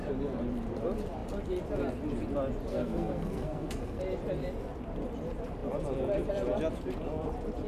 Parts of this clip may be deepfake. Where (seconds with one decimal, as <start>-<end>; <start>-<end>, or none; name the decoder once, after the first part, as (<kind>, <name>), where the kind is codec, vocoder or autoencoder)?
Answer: 2.7-4.0 (codec, SNAC)